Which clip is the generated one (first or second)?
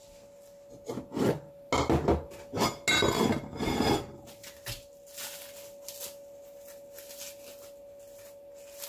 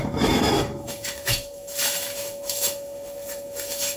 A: second